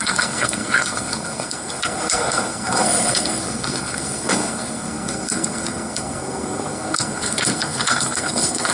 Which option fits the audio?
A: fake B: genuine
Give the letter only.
A